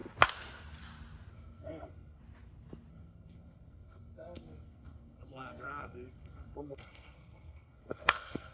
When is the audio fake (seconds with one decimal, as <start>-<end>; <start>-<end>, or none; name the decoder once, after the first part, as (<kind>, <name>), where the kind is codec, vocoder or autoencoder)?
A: 1.3-2.2 (codec, SNAC); 2.9-8.5